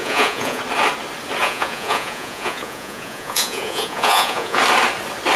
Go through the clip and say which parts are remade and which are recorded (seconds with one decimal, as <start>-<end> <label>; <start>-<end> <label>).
0.0-0.6 remade; 0.6-1.4 recorded; 1.4-4.6 remade; 4.6-5.4 recorded